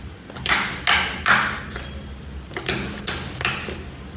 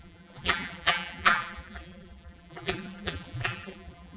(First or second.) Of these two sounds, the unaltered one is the first